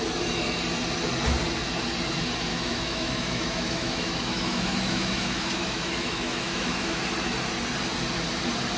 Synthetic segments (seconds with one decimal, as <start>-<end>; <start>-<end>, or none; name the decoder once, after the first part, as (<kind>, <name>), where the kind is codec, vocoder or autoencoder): 2.5-7.0 (autoencoder, DAC-VAE)